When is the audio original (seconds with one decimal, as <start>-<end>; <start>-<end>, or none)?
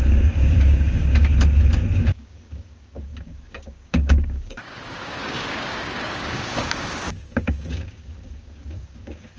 1.3-2.0